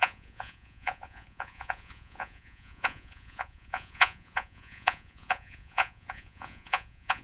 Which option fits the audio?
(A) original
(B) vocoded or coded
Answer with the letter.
B